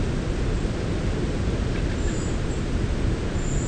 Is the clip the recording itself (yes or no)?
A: yes